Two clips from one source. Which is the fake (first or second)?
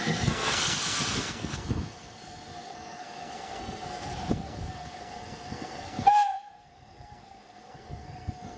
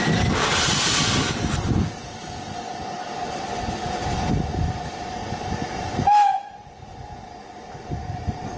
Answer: first